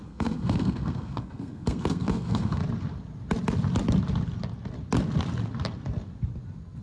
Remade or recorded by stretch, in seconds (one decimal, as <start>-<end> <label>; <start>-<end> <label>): 0.0-2.6 remade; 2.6-6.8 recorded